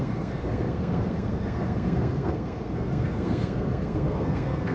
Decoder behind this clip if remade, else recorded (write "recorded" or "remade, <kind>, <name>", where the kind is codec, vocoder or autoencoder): remade, codec, SNAC